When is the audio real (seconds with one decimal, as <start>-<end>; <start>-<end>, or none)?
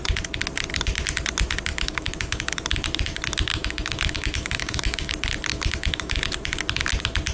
0.0-1.7; 2.6-3.5; 5.1-5.5; 6.2-7.3